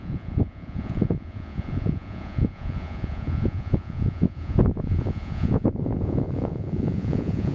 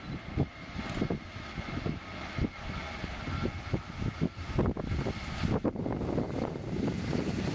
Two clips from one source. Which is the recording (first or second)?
second